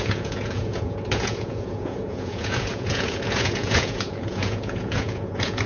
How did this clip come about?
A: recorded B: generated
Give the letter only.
B